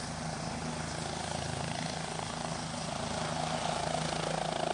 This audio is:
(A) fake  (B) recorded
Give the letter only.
B